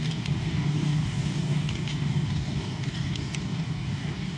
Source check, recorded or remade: remade